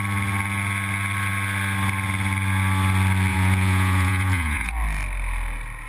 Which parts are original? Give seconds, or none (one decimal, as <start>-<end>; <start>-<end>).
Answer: 0.0-3.3; 4.7-5.9